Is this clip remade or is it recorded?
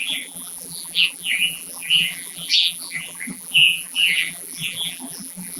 remade